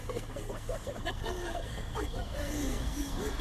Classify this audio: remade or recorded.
remade